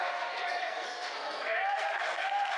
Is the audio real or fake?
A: fake